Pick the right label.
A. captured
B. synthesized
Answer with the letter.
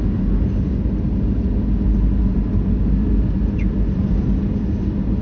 A